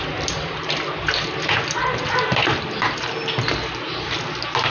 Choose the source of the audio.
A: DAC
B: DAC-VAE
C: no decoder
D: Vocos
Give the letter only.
C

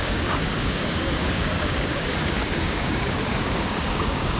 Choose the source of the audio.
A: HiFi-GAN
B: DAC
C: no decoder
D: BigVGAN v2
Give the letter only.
B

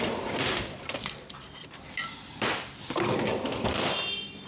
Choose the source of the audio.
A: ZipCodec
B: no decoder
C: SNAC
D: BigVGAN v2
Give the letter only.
D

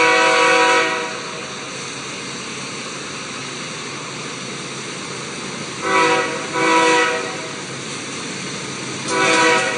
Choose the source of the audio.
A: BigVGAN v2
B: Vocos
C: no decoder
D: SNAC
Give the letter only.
C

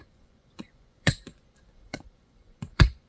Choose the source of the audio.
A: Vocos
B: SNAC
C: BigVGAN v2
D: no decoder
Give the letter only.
A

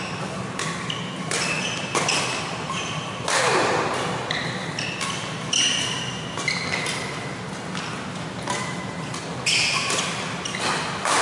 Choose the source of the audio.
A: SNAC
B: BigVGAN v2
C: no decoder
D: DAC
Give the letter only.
C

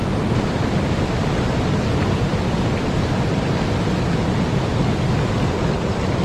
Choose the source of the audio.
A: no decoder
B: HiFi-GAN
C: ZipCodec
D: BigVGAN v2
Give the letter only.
A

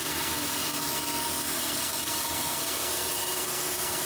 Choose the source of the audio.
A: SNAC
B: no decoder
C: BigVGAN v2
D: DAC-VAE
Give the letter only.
A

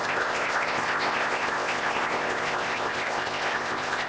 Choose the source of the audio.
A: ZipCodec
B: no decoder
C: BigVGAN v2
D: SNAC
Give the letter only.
A